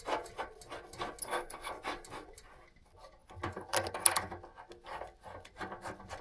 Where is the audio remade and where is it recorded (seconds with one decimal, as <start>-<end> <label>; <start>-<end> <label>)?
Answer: 0.0-1.2 recorded; 1.2-1.7 remade; 1.7-6.2 recorded